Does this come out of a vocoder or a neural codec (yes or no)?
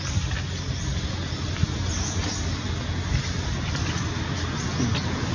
no